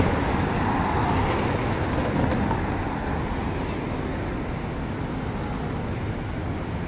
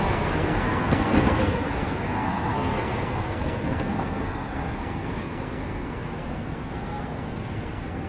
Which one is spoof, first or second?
second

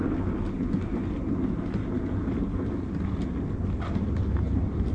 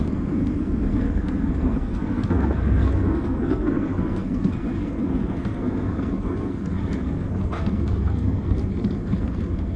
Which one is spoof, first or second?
second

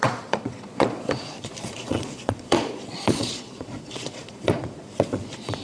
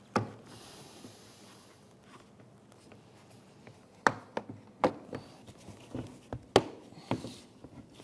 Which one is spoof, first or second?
first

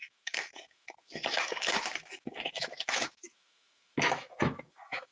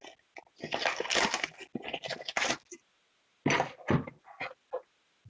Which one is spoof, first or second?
first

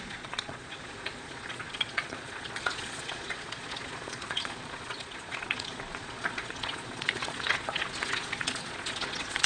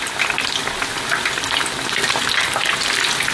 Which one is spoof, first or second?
first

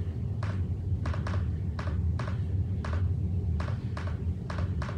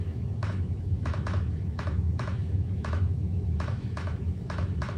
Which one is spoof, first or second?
second